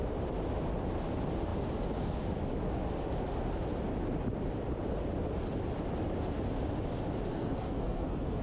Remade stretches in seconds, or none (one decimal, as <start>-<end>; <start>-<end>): 7.3-8.4